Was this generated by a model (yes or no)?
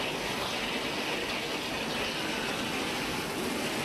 no